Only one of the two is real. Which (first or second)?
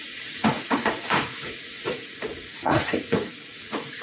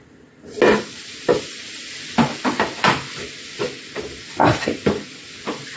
second